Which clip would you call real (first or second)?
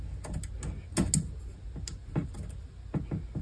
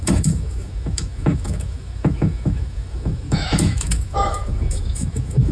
first